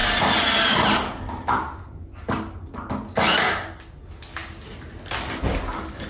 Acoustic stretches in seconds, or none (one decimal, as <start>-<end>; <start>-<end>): 0.0-6.1